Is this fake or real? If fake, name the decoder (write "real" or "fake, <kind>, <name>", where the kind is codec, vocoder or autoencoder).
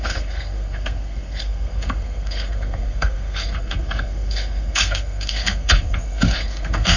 fake, codec, SNAC